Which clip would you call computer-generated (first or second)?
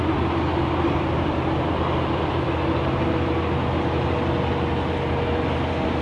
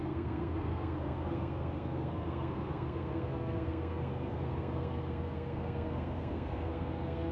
second